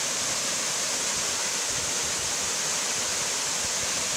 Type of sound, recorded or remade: recorded